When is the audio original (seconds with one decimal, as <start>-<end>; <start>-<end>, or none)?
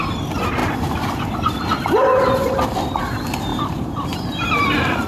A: 0.0-3.5; 4.2-5.1